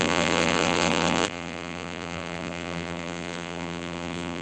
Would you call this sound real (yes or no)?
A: no